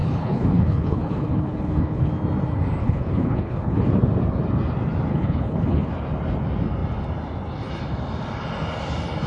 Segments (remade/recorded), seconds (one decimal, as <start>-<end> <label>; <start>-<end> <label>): 0.0-2.1 remade; 2.1-2.8 recorded; 2.8-3.9 remade; 3.9-5.1 recorded; 5.1-5.9 remade; 5.9-9.3 recorded